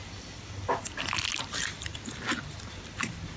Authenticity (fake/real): real